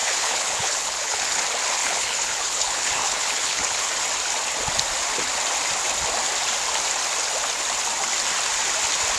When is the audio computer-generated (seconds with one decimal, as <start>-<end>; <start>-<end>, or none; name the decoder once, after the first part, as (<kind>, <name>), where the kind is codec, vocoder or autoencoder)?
0.0-1.4 (codec, HILCodec); 1.8-3.9